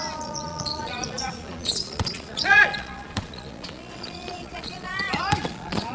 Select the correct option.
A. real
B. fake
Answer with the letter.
B